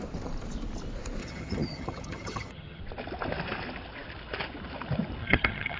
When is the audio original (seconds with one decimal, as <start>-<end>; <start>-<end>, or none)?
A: 0.0-1.2; 2.8-5.2